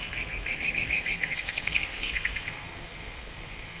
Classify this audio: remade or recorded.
remade